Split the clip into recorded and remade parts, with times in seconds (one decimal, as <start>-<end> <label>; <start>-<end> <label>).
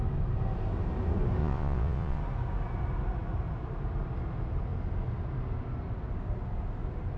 0.0-1.4 recorded; 1.4-2.2 remade; 2.2-7.2 recorded